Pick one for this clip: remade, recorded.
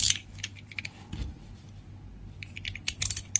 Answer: recorded